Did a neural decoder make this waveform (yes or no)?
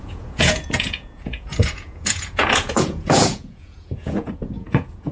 yes